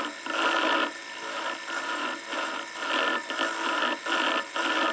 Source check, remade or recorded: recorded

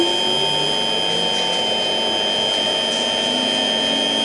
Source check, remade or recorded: recorded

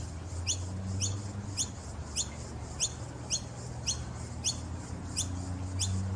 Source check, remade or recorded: recorded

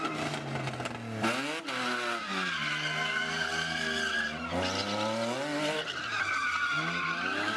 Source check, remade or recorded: recorded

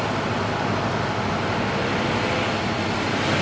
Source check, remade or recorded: recorded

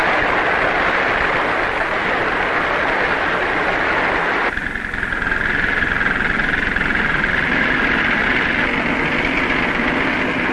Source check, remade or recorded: recorded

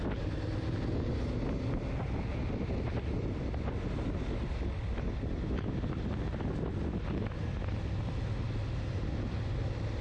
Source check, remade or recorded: recorded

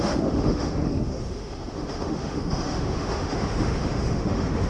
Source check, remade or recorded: remade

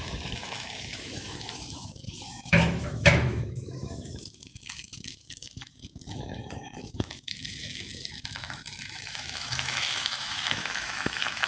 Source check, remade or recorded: remade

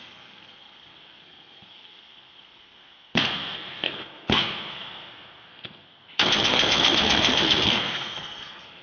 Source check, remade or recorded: remade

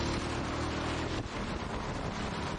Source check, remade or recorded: recorded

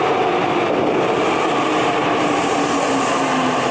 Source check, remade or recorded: recorded